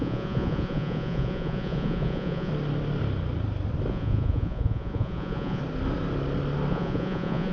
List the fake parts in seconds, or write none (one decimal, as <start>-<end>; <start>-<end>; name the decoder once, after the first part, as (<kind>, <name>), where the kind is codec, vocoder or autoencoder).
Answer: 0.0-2.5 (vocoder, Vocos); 3.9-5.6; 6.7-7.5